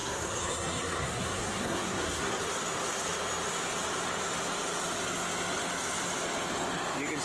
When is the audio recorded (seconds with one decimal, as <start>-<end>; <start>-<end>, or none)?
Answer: 2.4-7.2